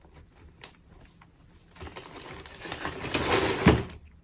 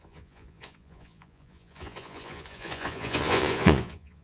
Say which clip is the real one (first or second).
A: first